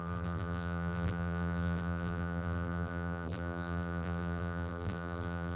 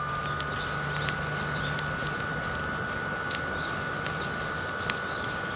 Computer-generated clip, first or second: first